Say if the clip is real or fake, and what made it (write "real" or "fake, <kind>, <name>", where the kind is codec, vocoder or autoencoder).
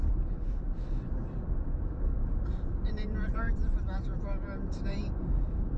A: fake, vocoder, BigVGAN v2